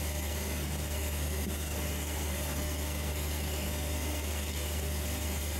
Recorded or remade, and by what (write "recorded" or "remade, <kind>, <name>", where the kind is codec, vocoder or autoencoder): remade, codec, SNAC